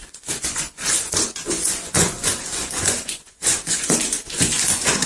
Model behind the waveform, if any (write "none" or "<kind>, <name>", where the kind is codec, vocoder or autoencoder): vocoder, Vocos